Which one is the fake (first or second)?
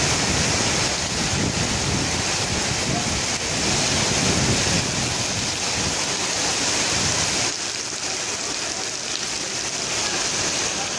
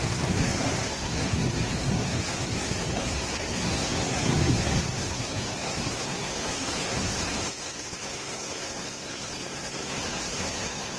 second